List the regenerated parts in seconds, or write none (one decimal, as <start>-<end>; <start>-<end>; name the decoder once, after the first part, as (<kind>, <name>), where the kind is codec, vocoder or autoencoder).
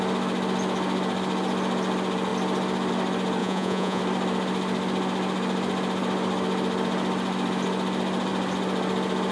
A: 3.4-4.0 (vocoder, Vocos)